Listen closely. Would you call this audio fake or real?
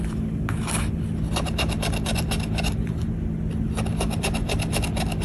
real